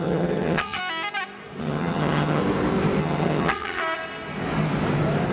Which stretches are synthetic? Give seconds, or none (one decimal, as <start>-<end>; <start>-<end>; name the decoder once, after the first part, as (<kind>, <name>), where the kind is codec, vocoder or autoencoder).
0.0-0.8 (vocoder, HiFi-GAN); 1.6-2.4; 3.0-3.8